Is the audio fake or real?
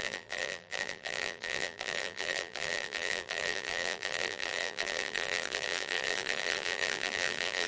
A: fake